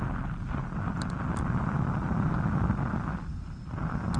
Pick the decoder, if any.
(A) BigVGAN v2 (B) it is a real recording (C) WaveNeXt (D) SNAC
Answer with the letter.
B